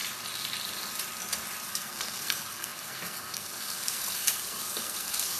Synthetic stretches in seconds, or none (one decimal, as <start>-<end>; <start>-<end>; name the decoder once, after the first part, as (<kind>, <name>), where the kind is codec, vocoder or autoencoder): 1.7-5.4 (codec, SNAC)